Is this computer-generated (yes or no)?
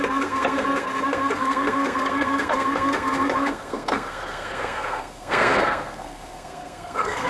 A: yes